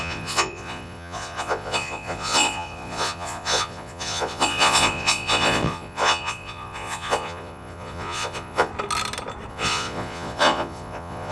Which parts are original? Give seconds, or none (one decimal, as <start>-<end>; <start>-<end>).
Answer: 8.7-9.5